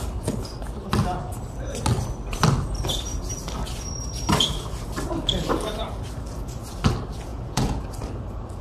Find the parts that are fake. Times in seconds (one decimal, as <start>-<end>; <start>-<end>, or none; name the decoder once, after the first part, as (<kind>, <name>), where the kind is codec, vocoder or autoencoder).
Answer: 7.3-7.8 (vocoder, Vocos)

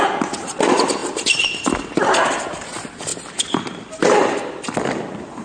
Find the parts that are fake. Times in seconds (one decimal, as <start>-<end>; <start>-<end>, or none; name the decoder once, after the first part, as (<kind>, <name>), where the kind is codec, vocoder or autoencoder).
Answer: none

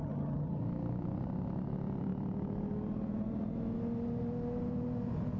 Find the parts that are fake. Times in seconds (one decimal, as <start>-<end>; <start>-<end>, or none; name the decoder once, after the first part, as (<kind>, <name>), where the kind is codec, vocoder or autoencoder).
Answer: 0.0-0.6 (vocoder, HiFi-GAN)

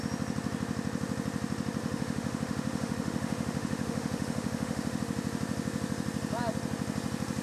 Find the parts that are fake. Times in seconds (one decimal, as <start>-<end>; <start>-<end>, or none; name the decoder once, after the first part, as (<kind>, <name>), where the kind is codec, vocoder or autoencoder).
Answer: 1.8-5.0 (autoencoder, DAC-VAE)

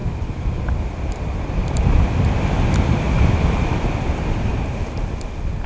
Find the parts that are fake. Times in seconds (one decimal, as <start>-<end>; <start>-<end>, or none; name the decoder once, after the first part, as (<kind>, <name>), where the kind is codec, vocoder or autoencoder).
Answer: none